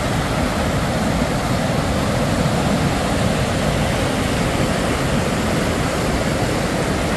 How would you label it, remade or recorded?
recorded